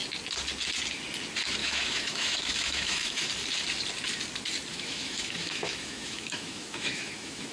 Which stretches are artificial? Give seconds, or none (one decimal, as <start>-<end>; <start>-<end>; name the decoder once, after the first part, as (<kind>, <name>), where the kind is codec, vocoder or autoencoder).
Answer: 1.6-3.3 (autoencoder, DAC-VAE); 4.7-7.5